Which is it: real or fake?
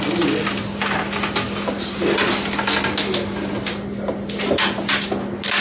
real